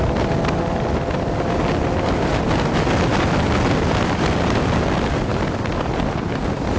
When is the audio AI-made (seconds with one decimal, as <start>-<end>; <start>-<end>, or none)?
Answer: none